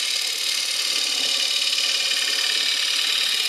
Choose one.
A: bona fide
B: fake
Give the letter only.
A